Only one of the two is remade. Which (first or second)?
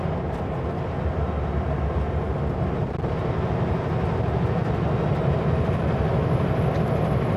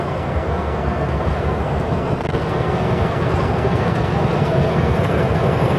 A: second